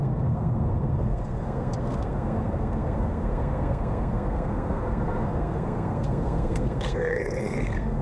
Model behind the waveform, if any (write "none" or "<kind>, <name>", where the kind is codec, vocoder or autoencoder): codec, SNAC